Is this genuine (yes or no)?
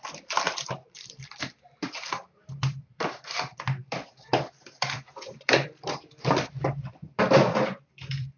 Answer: no